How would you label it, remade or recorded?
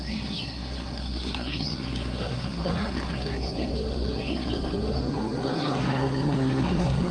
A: remade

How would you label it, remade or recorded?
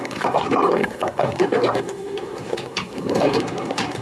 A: remade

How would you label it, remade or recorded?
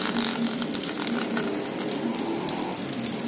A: recorded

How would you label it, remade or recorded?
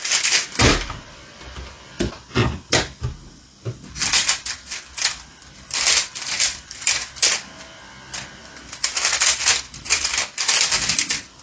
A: remade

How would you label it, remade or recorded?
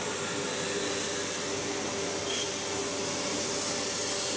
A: recorded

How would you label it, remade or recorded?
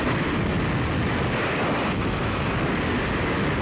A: recorded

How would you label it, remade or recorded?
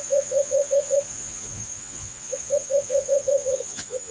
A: remade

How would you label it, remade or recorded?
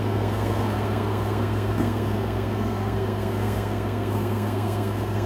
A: remade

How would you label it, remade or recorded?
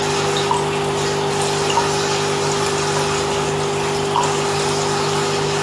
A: recorded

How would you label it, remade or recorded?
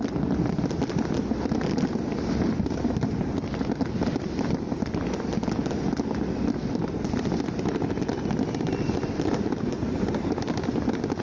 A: recorded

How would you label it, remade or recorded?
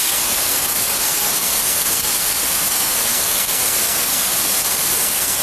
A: remade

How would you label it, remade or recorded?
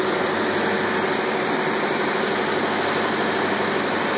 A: recorded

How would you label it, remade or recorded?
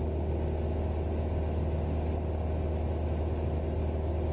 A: recorded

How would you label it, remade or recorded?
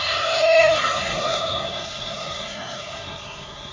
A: remade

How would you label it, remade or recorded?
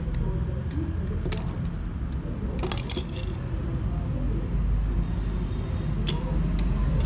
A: recorded